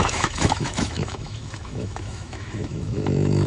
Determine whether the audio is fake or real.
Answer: fake